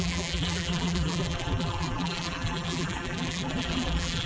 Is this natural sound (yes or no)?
no